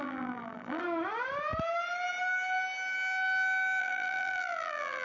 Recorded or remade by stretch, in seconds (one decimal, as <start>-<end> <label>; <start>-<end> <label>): 0.0-0.8 remade; 0.8-3.8 recorded; 3.8-5.0 remade